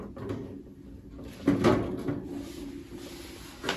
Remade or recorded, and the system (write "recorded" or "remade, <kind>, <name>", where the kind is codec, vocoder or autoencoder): recorded